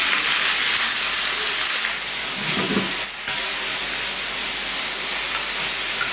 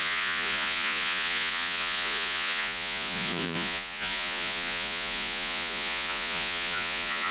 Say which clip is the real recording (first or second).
first